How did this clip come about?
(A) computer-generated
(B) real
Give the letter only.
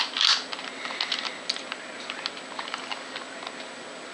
B